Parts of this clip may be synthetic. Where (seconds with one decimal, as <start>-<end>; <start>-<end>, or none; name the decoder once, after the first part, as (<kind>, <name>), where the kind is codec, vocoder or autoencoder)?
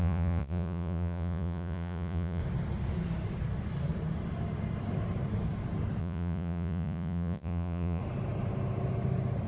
0.0-2.4 (vocoder, Vocos); 6.0-8.0